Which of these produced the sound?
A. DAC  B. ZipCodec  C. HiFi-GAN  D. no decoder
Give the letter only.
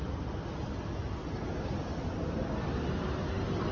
D